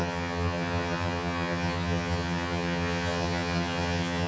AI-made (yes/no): yes